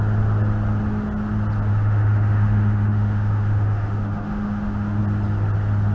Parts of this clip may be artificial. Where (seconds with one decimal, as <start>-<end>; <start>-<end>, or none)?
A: 1.7-5.0